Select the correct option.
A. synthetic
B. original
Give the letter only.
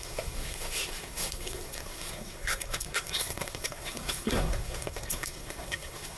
A